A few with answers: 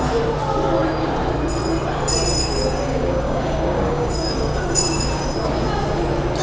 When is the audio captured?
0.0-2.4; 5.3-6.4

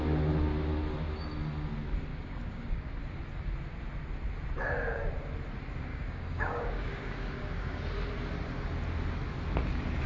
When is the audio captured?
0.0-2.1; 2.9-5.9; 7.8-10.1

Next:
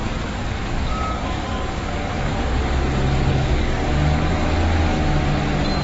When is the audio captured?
2.6-3.3; 4.5-5.8

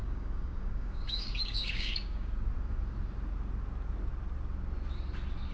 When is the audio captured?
2.3-5.5

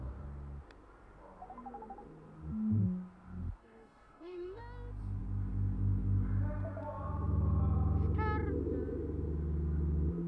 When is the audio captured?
0.0-3.6; 4.6-10.3

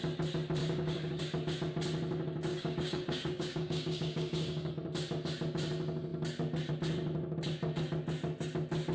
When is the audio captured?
0.0-0.6; 1.2-2.5; 4.7-8.9

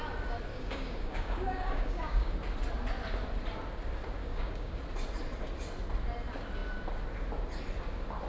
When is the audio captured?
0.0-0.5; 2.3-4.2; 4.8-8.3